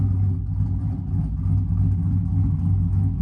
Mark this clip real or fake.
real